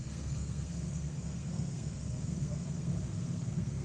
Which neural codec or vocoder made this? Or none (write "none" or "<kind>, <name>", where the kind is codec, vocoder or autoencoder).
codec, SNAC